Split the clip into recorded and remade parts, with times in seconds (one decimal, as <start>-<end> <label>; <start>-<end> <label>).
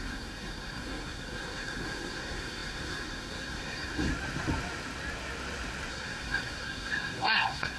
0.0-4.1 remade; 4.1-5.9 recorded; 5.9-7.8 remade